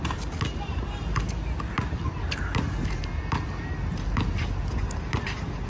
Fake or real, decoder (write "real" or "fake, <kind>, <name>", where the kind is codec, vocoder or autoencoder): real